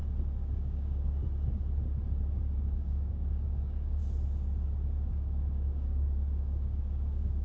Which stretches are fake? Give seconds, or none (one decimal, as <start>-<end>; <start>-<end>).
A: 0.5-1.2; 2.6-4.0; 5.1-7.4